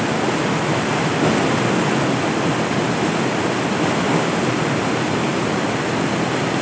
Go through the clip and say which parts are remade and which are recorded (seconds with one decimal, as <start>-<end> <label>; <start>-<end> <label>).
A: 0.0-5.3 recorded; 5.3-6.0 remade; 6.0-6.6 recorded